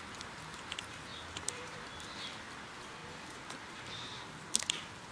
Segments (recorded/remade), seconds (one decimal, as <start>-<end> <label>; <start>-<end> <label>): 0.0-1.1 recorded; 1.1-1.8 remade; 1.8-3.0 recorded; 3.0-5.1 remade